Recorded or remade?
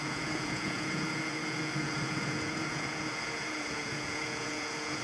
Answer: remade